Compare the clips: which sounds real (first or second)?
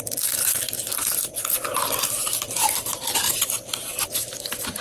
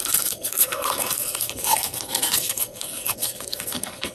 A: first